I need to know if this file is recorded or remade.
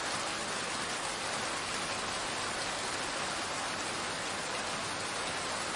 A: recorded